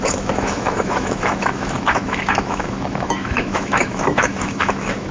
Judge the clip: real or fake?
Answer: fake